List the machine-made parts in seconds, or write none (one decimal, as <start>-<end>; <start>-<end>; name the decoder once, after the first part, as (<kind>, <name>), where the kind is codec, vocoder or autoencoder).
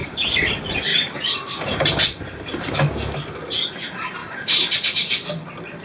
0.0-0.5 (vocoder, BigVGAN v2); 0.9-2.2; 4.2-5.3